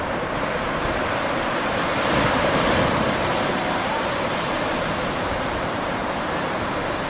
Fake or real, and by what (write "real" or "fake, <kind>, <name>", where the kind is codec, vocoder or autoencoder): fake, vocoder, BigVGAN v2